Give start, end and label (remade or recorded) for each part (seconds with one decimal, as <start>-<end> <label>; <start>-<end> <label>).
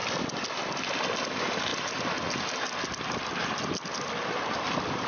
0.0-5.1 recorded